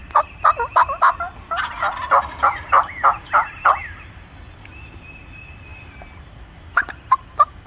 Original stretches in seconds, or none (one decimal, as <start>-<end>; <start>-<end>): 0.0-7.7